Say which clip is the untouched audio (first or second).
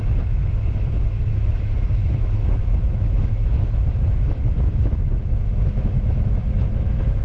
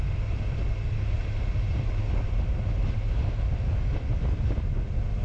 second